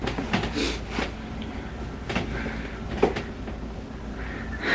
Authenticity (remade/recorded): recorded